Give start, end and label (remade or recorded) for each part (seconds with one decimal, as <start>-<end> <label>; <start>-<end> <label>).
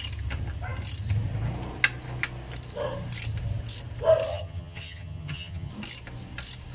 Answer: 0.0-4.3 recorded; 4.3-5.7 remade; 5.7-6.7 recorded